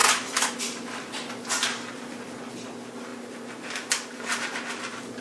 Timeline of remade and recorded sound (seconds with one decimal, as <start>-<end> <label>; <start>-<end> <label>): 0.0-5.2 recorded